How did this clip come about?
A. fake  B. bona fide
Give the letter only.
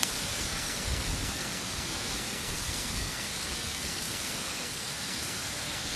A